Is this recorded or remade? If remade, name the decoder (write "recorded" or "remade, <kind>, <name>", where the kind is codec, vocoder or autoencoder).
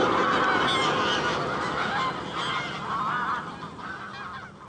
recorded